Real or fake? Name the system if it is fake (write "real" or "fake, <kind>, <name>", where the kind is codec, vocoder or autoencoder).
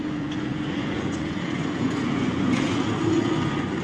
fake, vocoder, Vocos